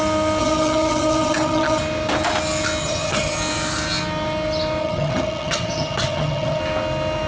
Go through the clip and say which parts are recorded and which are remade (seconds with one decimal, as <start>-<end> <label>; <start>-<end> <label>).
0.0-0.4 recorded; 0.4-1.8 remade; 1.8-2.8 recorded; 2.8-3.4 remade; 3.4-4.8 recorded; 4.8-6.6 remade; 6.6-7.3 recorded